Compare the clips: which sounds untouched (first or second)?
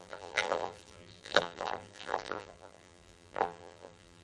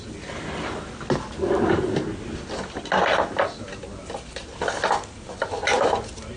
second